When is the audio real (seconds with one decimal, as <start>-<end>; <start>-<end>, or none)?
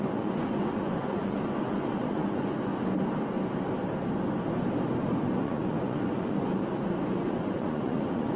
2.7-5.0